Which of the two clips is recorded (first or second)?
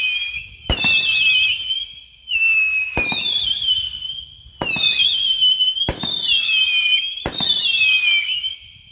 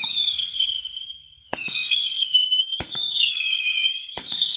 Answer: first